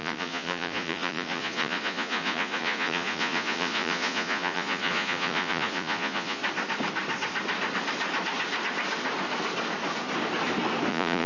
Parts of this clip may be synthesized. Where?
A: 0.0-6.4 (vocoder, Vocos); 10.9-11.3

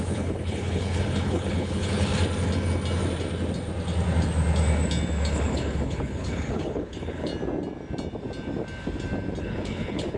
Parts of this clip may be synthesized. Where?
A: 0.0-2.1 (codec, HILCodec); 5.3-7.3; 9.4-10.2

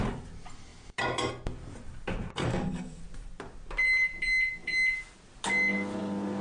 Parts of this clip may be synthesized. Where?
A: 2.4-3.0 (codec, DAC)